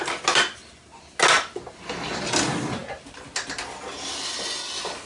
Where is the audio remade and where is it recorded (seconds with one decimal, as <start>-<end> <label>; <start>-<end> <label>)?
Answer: 0.0-5.1 recorded